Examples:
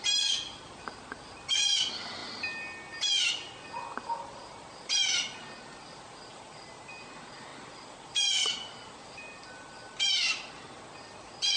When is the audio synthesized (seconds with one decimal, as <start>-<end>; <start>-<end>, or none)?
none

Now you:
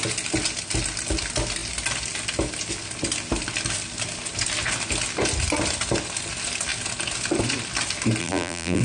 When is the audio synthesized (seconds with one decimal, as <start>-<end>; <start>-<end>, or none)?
8.2-8.8

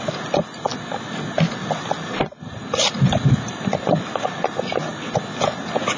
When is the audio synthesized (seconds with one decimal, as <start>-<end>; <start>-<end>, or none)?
0.7-4.1